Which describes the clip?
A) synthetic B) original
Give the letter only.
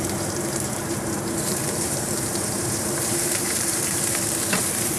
A